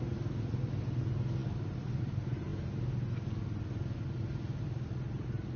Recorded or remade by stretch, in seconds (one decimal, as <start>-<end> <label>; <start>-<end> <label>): 0.0-5.6 recorded